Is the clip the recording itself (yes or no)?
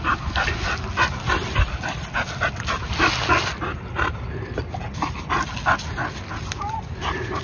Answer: yes